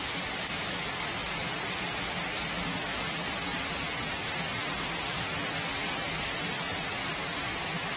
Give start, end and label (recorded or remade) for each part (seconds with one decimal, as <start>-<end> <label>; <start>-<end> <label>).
0.0-7.1 recorded; 7.1-8.0 remade